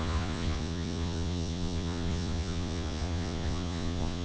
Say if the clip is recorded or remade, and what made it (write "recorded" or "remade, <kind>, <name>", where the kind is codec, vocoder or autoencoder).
remade, vocoder, Vocos